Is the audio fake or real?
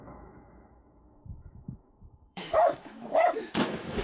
fake